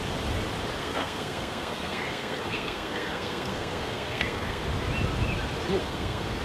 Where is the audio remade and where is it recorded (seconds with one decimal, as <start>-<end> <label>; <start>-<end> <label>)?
0.0-0.8 recorded; 0.8-4.6 remade; 4.6-5.8 recorded; 5.8-6.4 remade